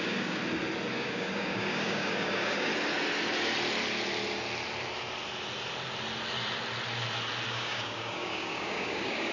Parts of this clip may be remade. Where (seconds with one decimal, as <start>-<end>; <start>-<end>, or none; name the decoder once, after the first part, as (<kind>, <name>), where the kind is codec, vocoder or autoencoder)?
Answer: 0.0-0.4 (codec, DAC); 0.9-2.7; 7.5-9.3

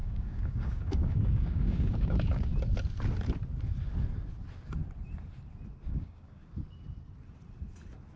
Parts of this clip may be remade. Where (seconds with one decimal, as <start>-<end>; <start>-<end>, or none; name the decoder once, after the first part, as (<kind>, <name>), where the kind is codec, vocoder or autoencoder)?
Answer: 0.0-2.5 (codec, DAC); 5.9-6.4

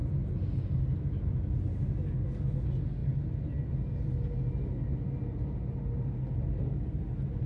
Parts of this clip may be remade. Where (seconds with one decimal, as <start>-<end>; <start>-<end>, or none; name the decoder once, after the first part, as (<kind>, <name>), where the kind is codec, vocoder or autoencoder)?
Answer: none